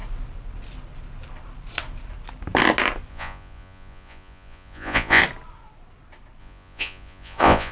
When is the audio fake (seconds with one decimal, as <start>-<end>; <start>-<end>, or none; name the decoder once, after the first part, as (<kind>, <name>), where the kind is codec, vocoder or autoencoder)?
3.1-5.2 (vocoder, Vocos); 6.4-7.7